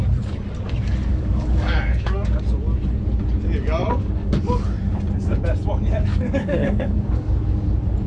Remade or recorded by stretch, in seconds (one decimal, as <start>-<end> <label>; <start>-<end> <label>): 0.0-1.1 recorded; 1.1-2.4 remade; 2.4-3.8 recorded; 3.8-4.6 remade; 4.6-6.1 recorded; 6.1-7.5 remade; 7.5-8.1 recorded